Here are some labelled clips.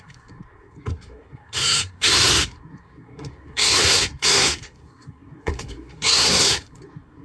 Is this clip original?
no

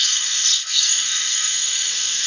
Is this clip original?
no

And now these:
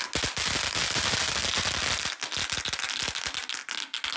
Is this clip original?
yes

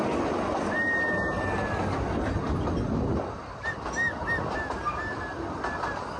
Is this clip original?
yes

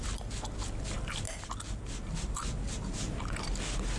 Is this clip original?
yes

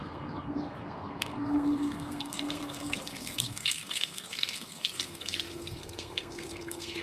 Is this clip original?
no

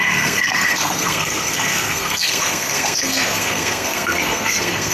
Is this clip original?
no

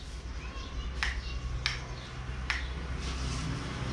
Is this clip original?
yes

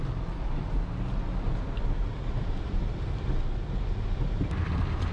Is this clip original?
yes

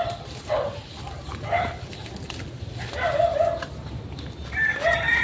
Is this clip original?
yes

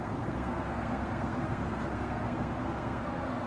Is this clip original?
no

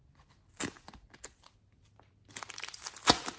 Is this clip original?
yes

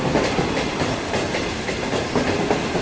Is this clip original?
yes